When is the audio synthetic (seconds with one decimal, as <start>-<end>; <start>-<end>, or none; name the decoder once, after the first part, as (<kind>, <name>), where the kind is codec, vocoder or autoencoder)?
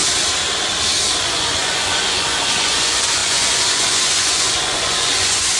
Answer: 1.2-5.6 (vocoder, Vocos)